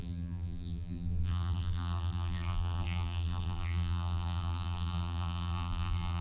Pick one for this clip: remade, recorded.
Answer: remade